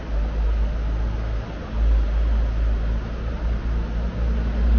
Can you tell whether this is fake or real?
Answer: real